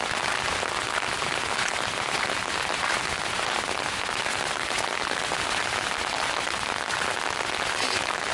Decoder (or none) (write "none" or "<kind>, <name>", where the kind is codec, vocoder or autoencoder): none